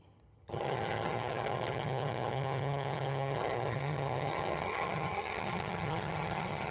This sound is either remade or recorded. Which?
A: remade